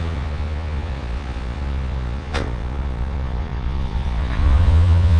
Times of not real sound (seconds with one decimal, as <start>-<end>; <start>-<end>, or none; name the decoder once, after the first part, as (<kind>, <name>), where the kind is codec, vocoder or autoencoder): 0.0-5.2 (vocoder, Vocos)